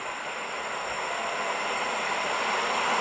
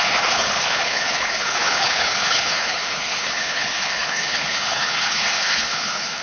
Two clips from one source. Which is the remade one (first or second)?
second